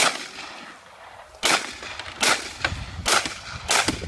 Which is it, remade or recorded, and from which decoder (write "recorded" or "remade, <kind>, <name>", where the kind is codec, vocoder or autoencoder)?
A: recorded